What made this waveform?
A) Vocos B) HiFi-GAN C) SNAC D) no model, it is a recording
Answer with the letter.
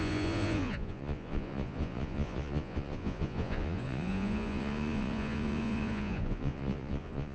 A